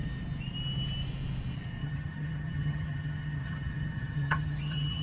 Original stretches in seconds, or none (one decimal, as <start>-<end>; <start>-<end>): 0.0-1.8